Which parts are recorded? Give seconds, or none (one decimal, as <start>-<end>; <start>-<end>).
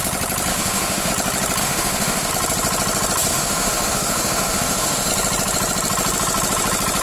0.0-0.5; 1.1-1.6; 2.3-3.3; 5.1-7.0